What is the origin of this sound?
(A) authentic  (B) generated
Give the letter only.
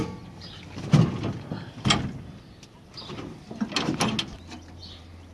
A